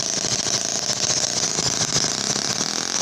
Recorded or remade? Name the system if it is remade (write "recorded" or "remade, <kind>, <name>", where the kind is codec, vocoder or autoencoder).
recorded